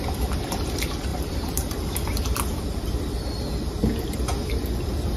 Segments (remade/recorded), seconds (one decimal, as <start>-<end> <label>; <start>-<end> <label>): 0.0-1.1 recorded; 1.1-2.6 remade; 2.6-5.2 recorded